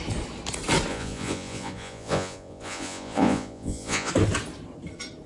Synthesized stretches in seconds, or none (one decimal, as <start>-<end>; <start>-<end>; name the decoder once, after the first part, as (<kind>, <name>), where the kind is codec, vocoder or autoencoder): 0.9-4.1 (vocoder, Vocos)